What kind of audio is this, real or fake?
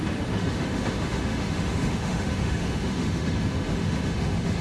fake